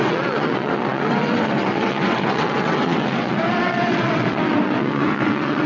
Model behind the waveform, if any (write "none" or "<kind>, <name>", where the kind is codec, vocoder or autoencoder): vocoder, WaveNeXt